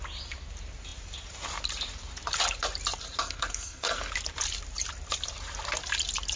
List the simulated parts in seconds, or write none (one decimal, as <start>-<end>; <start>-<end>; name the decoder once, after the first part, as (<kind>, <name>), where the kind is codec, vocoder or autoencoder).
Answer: 3.2-4.1 (codec, SNAC)